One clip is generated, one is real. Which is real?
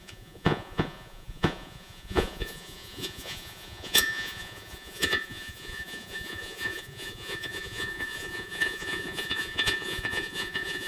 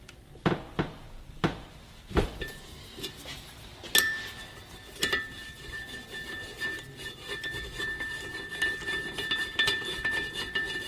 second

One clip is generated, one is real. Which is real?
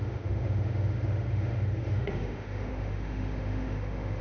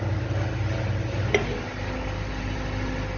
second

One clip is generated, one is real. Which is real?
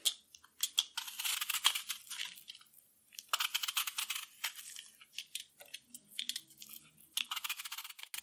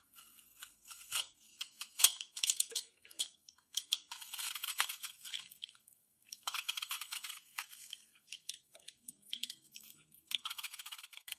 first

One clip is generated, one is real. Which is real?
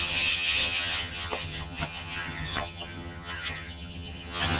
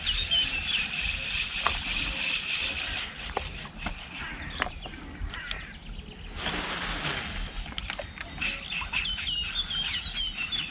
second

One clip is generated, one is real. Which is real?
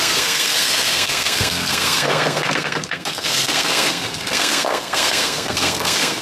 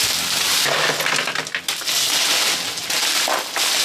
second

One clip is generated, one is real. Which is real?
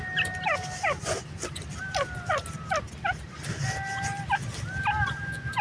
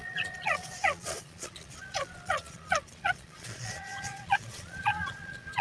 first